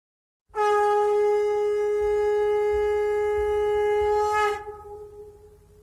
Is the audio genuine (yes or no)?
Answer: yes